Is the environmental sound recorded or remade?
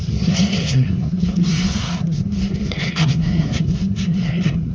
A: remade